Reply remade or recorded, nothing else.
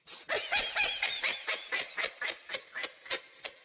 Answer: recorded